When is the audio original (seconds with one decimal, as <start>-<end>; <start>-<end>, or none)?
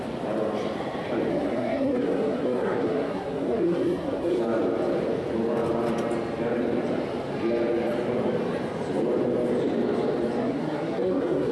0.0-1.3; 4.4-10.4